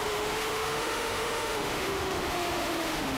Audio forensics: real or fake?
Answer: fake